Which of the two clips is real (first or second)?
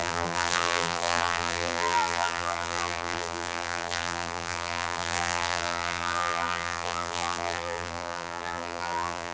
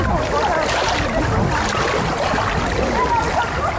second